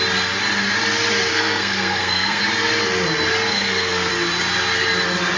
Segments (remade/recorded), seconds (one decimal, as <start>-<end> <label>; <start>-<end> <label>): 0.0-1.3 recorded; 1.3-2.4 remade; 2.4-3.5 recorded; 3.5-4.1 remade; 4.1-5.4 recorded